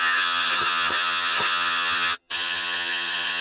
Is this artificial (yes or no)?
yes